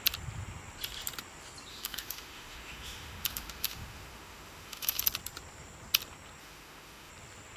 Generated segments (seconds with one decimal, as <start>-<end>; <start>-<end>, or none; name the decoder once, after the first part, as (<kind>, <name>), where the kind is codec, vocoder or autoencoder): 1.7-5.0 (autoencoder, DAC-VAE); 6.4-7.1